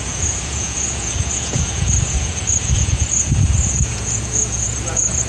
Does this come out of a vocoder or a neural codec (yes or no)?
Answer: yes